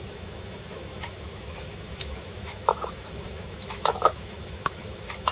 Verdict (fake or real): fake